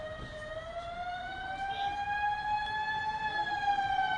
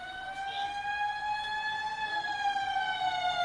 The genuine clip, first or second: second